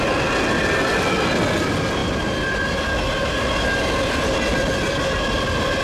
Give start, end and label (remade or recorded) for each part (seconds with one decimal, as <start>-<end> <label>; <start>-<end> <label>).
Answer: 0.0-5.8 recorded